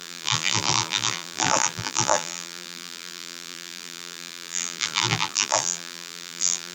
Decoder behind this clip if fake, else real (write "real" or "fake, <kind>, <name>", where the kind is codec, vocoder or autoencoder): fake, vocoder, BigVGAN v2